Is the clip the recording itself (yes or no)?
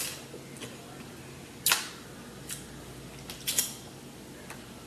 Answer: yes